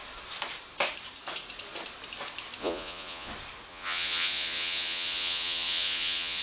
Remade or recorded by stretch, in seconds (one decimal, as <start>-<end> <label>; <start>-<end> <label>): 0.0-2.6 recorded; 2.6-3.3 remade; 3.3-3.7 recorded; 3.7-6.4 remade